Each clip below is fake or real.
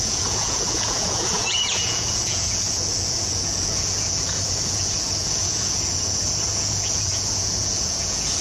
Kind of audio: fake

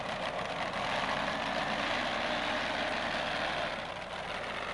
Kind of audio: real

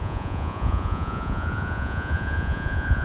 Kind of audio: fake